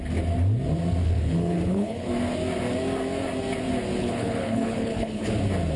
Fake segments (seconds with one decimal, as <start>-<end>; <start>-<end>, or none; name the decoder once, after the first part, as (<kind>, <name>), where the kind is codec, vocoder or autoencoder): 1.0-2.1 (codec, HILCodec); 4.0-5.3